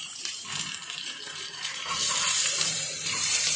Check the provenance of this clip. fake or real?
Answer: fake